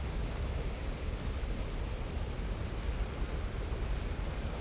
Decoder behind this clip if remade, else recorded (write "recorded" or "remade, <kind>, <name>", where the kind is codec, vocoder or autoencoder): recorded